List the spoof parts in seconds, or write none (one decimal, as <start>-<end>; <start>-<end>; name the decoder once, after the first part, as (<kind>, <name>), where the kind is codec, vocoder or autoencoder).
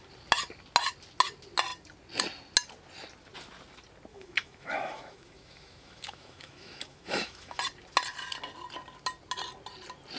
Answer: 4.1-7.6 (autoencoder, DAC-VAE)